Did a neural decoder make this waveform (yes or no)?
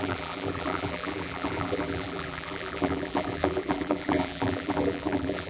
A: yes